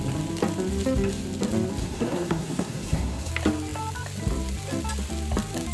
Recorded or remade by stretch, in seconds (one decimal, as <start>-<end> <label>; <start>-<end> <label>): 0.0-1.8 recorded; 1.8-3.3 remade; 3.3-5.7 recorded